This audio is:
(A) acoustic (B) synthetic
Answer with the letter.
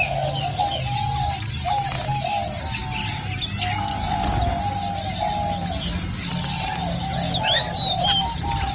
A